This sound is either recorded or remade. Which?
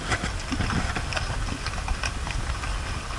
recorded